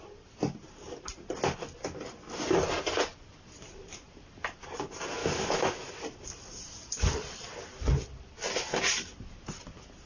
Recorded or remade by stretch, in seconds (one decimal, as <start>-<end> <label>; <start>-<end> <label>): 0.0-5.2 recorded; 5.2-5.9 remade; 5.9-10.1 recorded